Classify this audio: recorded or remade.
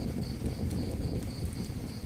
recorded